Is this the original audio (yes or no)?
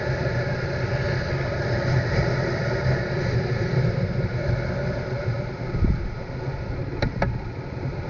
yes